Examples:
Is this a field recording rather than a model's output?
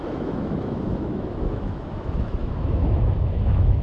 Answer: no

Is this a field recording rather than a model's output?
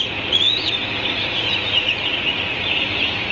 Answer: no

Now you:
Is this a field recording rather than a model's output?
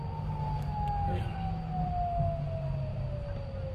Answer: yes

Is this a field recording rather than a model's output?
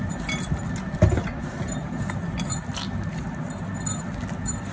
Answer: yes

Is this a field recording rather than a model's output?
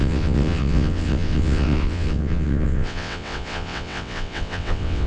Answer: no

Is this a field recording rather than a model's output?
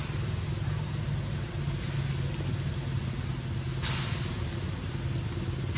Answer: yes